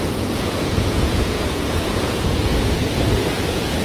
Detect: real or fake fake